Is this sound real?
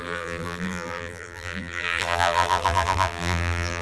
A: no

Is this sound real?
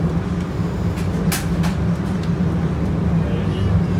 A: yes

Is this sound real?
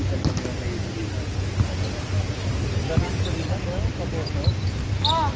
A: yes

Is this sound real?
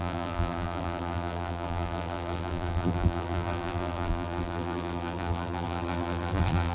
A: no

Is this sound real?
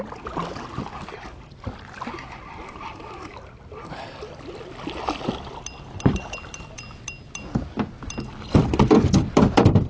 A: yes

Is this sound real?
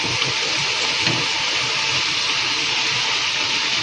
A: yes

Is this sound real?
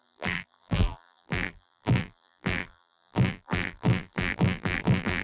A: no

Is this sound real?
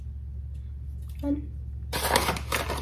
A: yes